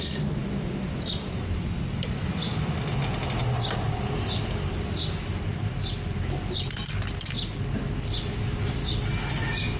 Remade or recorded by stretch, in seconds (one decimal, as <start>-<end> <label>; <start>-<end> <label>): 0.0-9.8 recorded